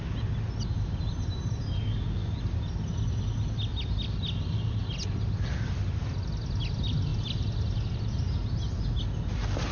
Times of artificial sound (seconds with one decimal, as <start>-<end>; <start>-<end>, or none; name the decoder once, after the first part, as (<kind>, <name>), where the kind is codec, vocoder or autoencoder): none